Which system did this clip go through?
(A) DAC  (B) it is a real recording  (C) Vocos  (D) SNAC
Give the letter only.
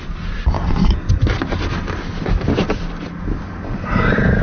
B